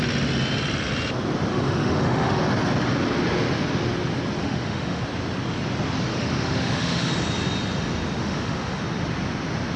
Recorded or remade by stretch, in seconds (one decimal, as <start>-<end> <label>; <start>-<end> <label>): 0.0-1.5 recorded; 1.5-2.4 remade; 2.4-4.4 recorded; 4.4-5.0 remade; 5.0-6.1 recorded; 6.1-7.1 remade; 7.1-8.2 recorded; 8.2-8.8 remade; 8.8-9.8 recorded

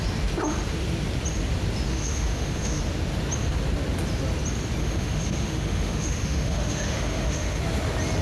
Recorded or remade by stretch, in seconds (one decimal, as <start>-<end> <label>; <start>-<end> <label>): 0.0-1.9 recorded; 1.9-2.8 remade; 2.8-4.8 recorded; 4.8-7.6 remade; 7.6-8.2 recorded